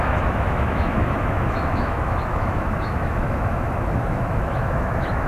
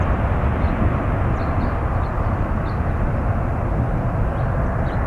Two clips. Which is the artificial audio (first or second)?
first